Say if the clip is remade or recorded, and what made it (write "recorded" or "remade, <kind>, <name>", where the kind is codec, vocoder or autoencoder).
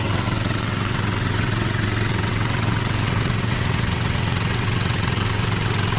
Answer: remade, vocoder, WaveNeXt